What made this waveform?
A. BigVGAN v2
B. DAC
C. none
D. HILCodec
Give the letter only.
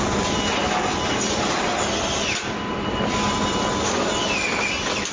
C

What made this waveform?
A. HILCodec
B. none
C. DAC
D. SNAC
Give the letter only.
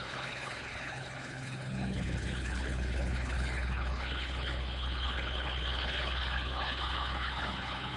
A